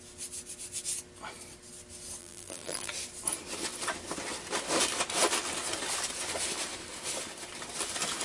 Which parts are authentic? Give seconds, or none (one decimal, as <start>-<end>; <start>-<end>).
0.0-2.2; 2.9-8.2